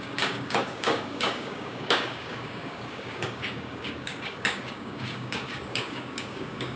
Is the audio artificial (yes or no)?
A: yes